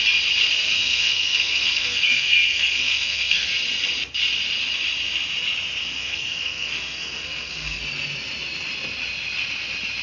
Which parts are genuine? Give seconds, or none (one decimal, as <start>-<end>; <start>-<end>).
0.0-0.7; 3.5-5.8; 7.8-10.0